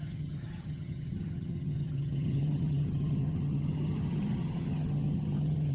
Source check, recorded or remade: remade